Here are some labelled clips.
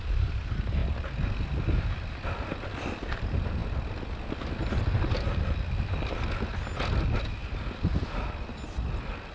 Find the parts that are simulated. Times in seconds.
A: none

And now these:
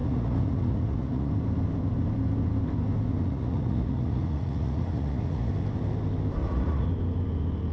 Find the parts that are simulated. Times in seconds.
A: 0.0-1.3 (vocoder, Vocos); 3.2-5.5; 6.4-6.9

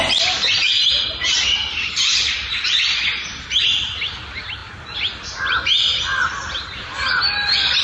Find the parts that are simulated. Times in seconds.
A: none